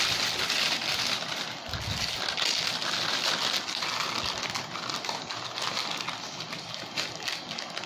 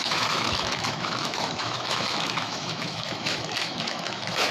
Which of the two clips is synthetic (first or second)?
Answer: second